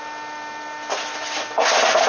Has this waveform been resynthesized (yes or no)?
no